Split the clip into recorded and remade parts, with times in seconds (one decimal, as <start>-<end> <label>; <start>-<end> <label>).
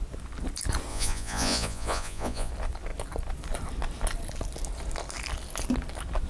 0.0-0.9 recorded; 0.9-2.5 remade; 2.5-6.3 recorded